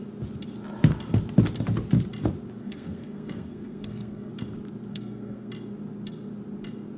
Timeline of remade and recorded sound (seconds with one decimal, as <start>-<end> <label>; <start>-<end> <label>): 0.0-2.6 recorded; 2.6-4.3 remade; 4.3-4.9 recorded; 4.9-5.5 remade; 5.5-7.0 recorded